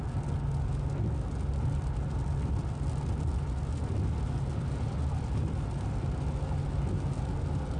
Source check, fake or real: real